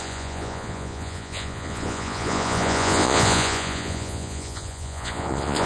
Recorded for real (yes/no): no